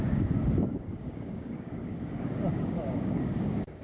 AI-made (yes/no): yes